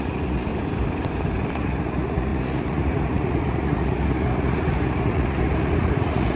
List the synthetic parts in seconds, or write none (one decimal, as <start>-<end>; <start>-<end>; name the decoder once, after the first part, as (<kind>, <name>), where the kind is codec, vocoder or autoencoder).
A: 0.0-0.5 (vocoder, Vocos); 1.5-6.4

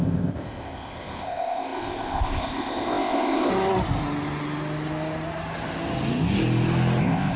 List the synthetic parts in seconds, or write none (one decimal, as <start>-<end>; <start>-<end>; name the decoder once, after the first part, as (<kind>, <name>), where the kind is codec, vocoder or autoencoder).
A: 0.0-3.5 (codec, ZipCodec); 7.0-7.4

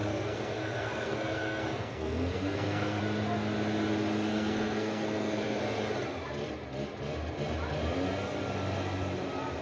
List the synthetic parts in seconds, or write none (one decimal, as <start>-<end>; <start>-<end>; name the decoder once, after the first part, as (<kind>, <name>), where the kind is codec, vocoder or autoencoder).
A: 0.0-3.0 (codec, SNAC); 4.3-5.6